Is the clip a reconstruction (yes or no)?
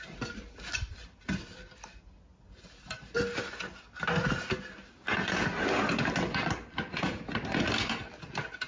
no